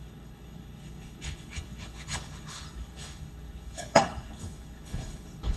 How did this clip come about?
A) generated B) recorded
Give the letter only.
A